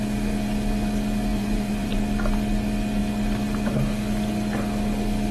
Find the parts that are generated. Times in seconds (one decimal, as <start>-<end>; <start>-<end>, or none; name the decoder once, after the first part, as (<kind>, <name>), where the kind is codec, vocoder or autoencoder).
1.3-2.0 (vocoder, BigVGAN v2)